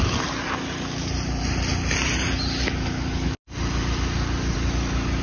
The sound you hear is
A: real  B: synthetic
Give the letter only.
A